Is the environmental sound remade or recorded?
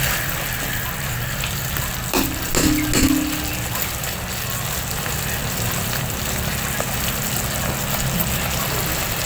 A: recorded